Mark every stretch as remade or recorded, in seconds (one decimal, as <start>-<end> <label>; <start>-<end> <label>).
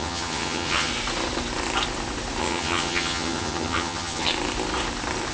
0.0-0.9 remade; 0.9-2.4 recorded; 2.4-4.3 remade; 4.3-5.3 recorded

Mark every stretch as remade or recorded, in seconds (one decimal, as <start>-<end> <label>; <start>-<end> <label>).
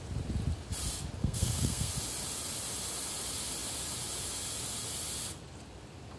0.0-1.2 recorded; 1.2-1.9 remade; 1.9-6.2 recorded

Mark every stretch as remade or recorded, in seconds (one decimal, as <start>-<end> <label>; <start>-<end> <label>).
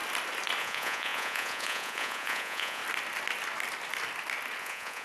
0.0-0.6 recorded; 0.6-2.8 remade; 2.8-4.6 recorded; 4.6-5.0 remade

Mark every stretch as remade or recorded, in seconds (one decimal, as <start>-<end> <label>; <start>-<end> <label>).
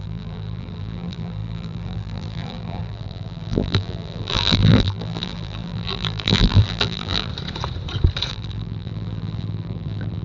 0.0-7.3 remade; 7.3-8.3 recorded; 8.3-10.2 remade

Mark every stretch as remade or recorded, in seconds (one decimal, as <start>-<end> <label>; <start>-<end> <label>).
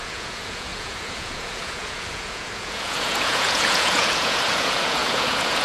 0.0-5.6 remade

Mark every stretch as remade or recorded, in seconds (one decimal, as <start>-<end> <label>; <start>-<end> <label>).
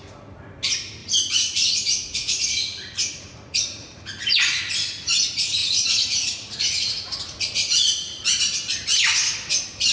0.0-1.0 recorded; 1.0-4.6 remade; 4.6-5.6 recorded; 5.6-8.4 remade; 8.4-9.9 recorded